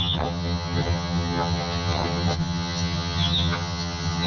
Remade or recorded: remade